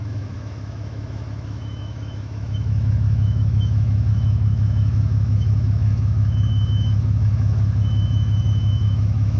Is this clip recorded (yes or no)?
no